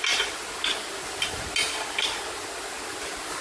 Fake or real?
real